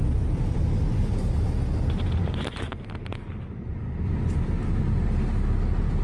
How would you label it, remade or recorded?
recorded